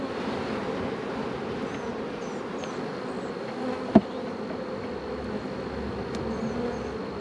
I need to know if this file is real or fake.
real